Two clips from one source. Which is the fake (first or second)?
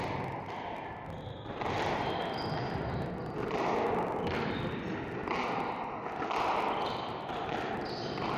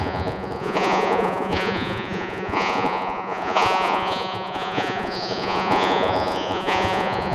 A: second